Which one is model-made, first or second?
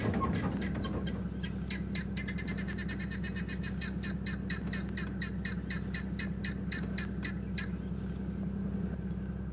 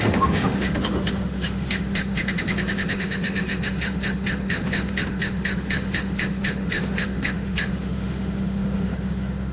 second